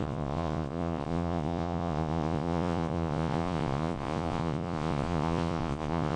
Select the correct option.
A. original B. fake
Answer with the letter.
B